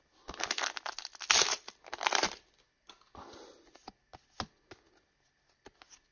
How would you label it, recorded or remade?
recorded